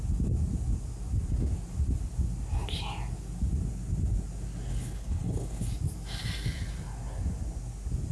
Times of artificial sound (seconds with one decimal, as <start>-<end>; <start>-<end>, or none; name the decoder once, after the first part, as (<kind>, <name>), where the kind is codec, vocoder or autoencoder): 4.7-5.7 (codec, HILCodec)